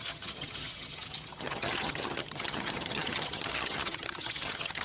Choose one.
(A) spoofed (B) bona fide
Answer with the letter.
A